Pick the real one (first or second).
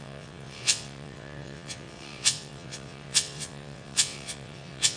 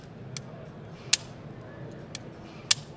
second